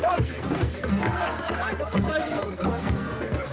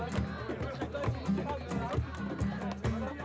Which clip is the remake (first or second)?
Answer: first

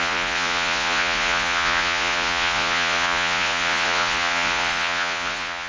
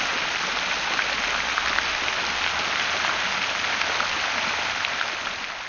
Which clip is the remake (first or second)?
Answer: first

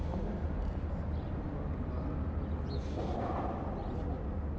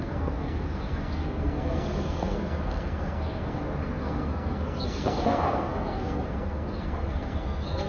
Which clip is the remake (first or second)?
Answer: second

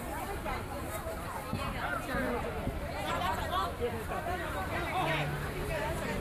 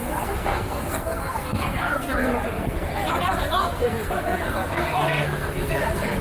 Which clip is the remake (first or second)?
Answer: second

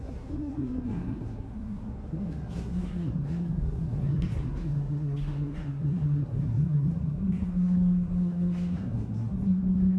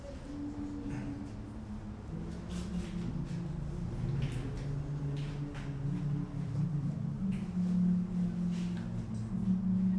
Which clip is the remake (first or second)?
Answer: first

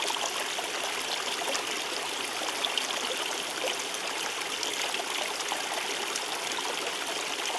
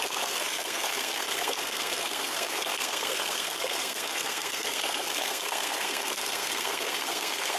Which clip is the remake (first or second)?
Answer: second